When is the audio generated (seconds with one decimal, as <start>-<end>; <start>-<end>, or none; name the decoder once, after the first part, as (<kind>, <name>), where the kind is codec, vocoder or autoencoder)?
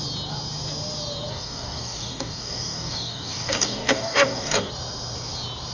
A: 1.3-4.7 (codec, DAC)